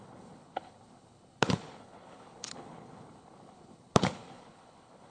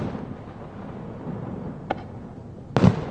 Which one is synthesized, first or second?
first